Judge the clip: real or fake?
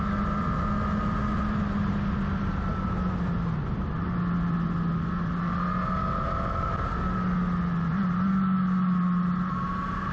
real